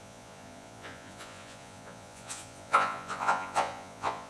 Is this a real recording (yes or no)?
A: no